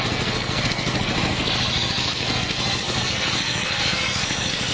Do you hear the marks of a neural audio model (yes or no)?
yes